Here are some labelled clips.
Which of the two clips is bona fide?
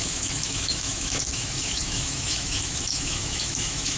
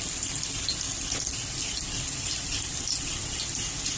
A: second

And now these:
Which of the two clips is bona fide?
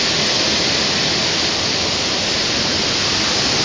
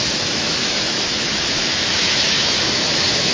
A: first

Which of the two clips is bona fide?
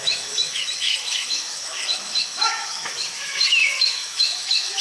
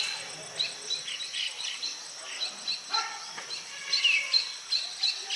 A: second